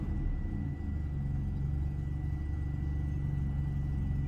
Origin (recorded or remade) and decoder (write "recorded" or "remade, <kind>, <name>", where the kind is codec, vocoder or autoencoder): recorded